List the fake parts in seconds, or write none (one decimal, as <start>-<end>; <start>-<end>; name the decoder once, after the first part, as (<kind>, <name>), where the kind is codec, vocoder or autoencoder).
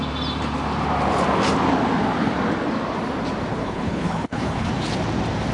3.5-4.7 (codec, HILCodec)